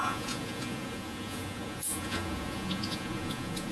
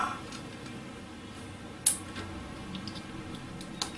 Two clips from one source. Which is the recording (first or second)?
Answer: second